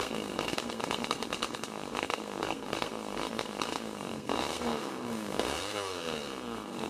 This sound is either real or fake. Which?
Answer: fake